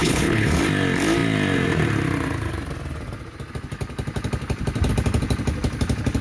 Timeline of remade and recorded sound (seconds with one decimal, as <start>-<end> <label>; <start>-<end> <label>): 0.0-0.6 remade; 0.6-6.2 recorded